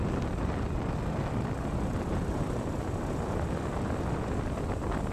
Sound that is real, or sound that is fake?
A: real